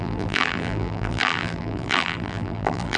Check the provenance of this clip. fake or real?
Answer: fake